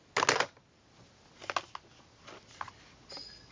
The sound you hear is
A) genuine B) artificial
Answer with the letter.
A